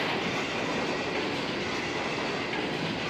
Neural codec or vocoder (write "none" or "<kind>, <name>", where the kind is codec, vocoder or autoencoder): none